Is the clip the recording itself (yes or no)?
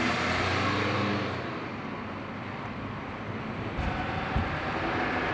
yes